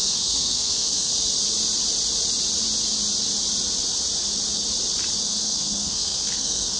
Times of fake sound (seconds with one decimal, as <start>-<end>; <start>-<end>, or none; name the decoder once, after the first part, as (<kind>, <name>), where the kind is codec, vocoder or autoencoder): 0.0-1.1 (codec, SNAC); 5.2-6.8